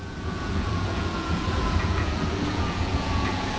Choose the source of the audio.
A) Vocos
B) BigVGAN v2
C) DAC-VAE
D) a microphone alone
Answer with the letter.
A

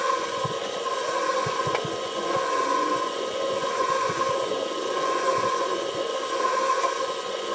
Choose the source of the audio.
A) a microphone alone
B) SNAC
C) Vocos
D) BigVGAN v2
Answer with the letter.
C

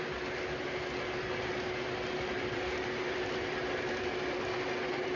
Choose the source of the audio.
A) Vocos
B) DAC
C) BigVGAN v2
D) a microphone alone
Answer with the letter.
D